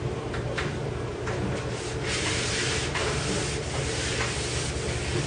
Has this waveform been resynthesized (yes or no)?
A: no